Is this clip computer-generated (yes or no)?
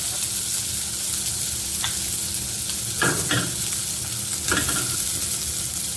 no